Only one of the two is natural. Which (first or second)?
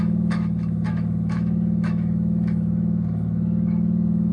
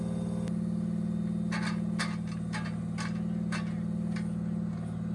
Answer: second